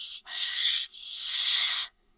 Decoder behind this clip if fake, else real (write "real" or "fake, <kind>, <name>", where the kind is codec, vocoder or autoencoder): fake, codec, SNAC